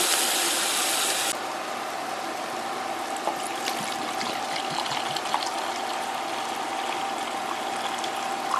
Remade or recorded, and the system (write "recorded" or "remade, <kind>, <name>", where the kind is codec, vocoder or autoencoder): recorded